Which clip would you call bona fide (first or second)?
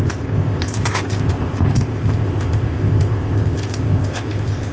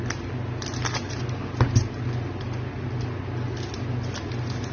second